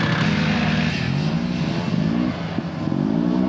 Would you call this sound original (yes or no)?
yes